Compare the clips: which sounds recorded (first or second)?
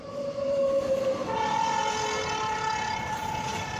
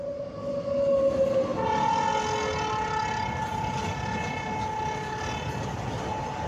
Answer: second